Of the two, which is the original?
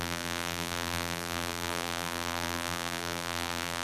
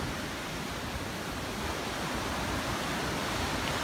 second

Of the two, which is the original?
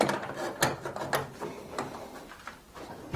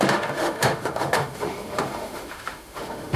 first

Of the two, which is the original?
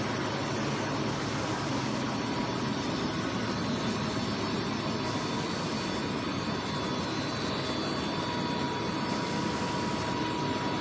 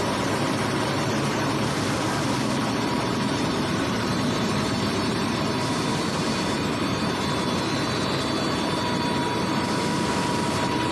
first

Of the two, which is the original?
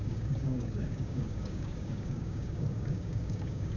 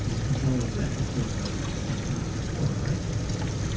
second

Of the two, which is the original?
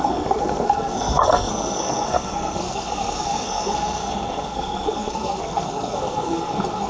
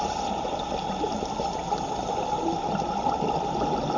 second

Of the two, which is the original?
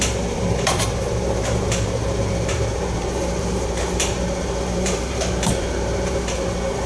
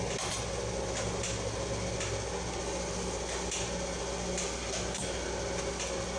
second